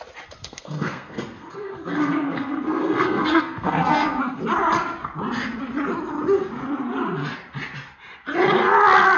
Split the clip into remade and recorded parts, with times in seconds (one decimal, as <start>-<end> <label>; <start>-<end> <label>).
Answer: 0.0-0.4 recorded; 0.4-4.4 remade; 4.4-9.2 recorded